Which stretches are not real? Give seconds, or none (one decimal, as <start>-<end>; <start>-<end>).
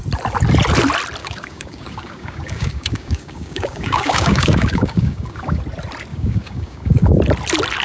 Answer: 1.2-5.6; 6.1-7.2